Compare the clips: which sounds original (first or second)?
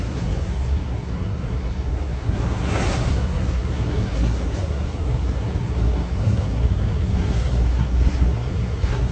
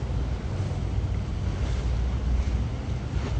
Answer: second